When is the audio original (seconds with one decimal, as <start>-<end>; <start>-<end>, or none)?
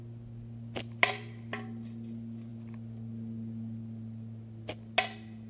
0.0-5.5